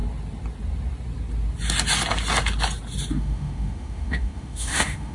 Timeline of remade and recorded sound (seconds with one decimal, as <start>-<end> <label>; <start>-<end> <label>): 0.0-3.1 recorded; 3.1-5.1 remade

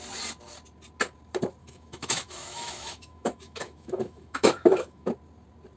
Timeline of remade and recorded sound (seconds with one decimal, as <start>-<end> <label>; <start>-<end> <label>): 0.0-1.6 recorded; 1.6-5.1 remade; 5.1-5.8 recorded

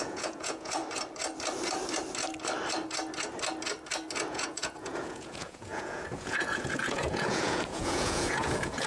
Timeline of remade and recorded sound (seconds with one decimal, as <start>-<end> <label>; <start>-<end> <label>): 0.0-0.8 remade; 0.8-4.3 recorded; 4.3-8.9 remade